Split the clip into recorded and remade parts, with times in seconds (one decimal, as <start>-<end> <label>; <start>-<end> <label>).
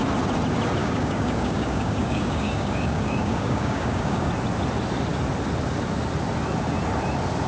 0.0-0.8 recorded; 0.8-4.3 remade; 4.3-7.5 recorded